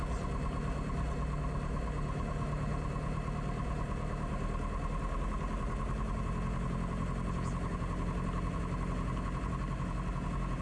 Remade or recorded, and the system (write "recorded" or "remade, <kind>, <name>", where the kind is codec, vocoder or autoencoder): recorded